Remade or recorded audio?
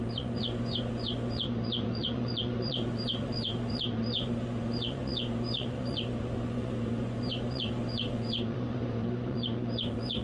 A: remade